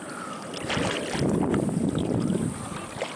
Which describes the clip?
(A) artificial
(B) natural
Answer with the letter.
B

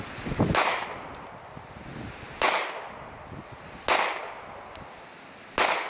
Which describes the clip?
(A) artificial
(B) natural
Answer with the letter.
B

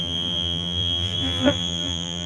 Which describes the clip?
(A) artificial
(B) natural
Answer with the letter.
A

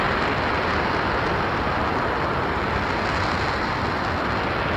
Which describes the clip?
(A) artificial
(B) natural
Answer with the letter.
B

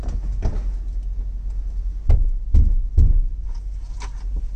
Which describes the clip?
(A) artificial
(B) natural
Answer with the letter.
B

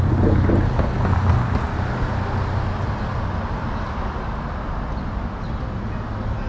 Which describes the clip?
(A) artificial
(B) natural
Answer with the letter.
B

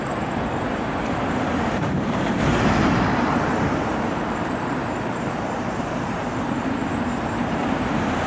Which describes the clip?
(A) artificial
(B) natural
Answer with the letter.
A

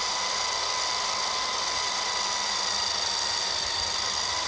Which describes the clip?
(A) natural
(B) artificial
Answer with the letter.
A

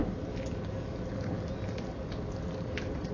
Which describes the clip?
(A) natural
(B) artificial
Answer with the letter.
A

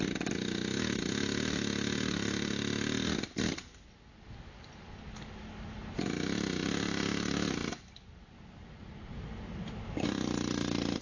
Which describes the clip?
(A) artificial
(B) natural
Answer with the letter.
B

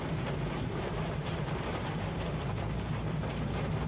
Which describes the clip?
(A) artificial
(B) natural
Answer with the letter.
A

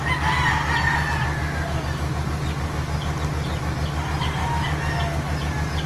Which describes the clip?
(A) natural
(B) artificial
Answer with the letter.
A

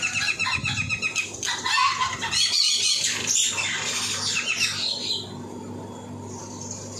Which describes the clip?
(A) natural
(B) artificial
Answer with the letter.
A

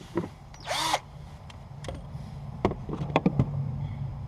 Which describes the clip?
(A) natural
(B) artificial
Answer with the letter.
B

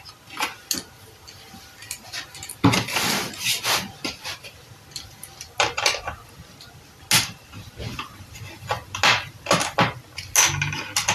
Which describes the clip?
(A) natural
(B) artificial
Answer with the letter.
A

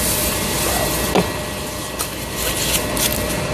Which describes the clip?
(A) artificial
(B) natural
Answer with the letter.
B